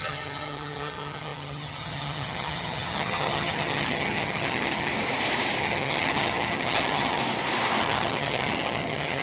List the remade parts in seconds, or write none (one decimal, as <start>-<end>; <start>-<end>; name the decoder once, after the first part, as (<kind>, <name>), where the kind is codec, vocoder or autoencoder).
0.0-4.9 (vocoder, HiFi-GAN); 5.6-7.2; 7.8-9.2